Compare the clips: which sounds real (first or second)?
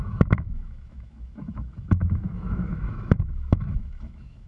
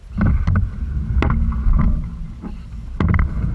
second